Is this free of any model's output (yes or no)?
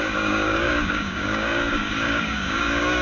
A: no